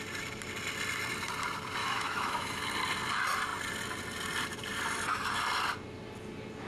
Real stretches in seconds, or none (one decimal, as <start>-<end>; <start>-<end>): 0.0-1.8; 2.6-6.7